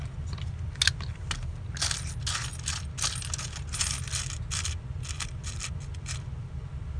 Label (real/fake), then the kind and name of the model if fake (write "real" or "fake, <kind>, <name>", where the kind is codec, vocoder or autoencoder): real